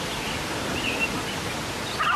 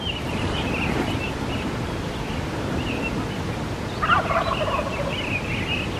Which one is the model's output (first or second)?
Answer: first